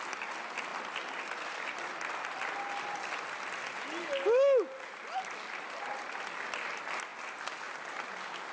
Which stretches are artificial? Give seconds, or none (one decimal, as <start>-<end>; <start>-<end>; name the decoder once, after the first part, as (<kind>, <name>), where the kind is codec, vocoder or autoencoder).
none